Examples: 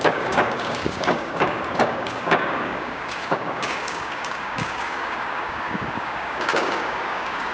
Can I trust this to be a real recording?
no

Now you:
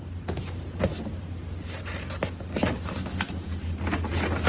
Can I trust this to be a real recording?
yes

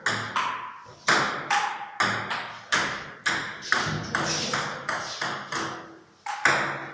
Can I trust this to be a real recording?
yes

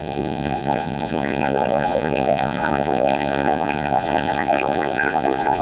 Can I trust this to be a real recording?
no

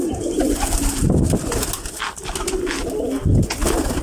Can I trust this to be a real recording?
yes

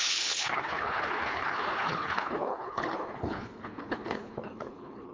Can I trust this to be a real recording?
no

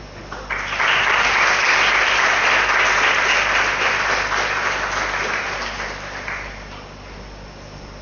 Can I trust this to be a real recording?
yes